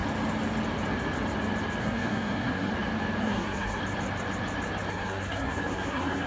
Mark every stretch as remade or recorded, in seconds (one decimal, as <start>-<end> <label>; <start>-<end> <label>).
0.0-1.8 recorded; 1.8-2.7 remade; 2.7-3.2 recorded; 3.2-3.8 remade; 3.8-4.9 recorded; 4.9-6.3 remade